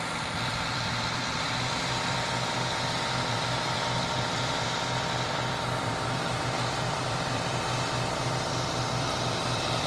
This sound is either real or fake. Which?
fake